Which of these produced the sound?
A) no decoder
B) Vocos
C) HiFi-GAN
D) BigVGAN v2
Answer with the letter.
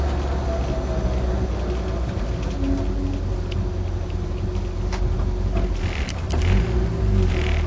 A